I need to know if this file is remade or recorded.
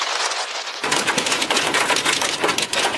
remade